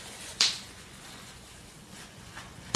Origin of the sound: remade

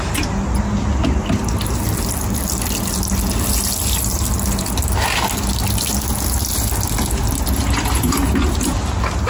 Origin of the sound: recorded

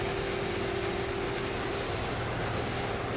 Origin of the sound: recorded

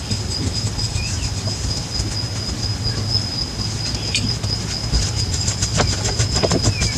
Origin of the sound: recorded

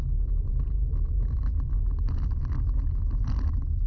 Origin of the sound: recorded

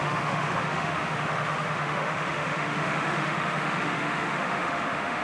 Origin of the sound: remade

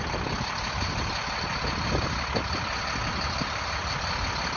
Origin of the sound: recorded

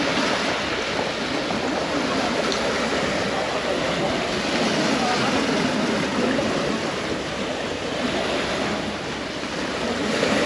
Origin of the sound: recorded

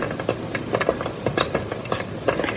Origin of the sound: recorded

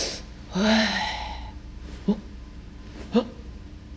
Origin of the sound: remade